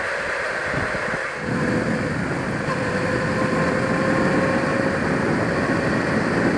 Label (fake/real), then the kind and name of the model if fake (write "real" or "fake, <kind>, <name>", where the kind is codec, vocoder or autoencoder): real